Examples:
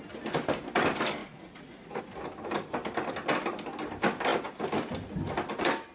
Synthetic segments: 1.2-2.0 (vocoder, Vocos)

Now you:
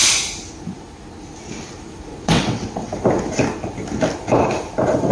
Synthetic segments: 2.1-3.0 (vocoder, WaveNeXt)